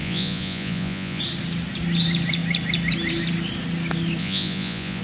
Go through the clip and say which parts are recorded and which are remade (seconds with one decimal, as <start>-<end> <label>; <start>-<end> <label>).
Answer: 0.0-1.2 remade; 1.2-4.2 recorded; 4.2-5.0 remade